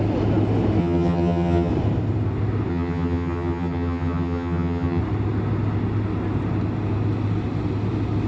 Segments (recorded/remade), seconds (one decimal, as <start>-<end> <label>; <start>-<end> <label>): 0.0-0.8 recorded; 0.8-1.7 remade; 1.7-2.7 recorded; 2.7-5.0 remade; 5.0-8.3 recorded